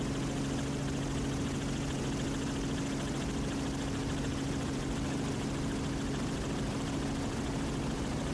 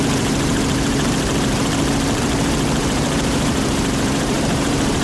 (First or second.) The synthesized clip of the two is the second